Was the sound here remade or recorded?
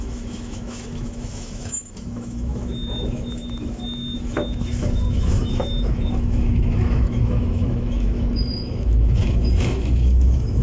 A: remade